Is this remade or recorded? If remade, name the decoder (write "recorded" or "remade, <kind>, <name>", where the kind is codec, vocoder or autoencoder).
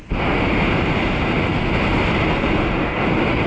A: recorded